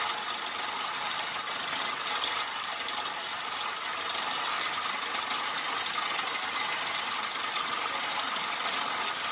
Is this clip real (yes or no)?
yes